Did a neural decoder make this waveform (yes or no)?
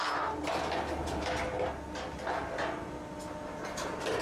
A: no